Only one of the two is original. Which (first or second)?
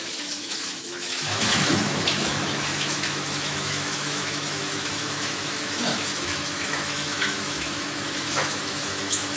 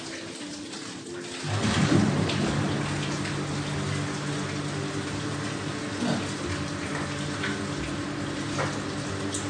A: second